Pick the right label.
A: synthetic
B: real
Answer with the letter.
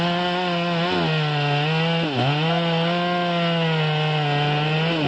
B